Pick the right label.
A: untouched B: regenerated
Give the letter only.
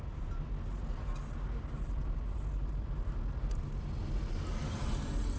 A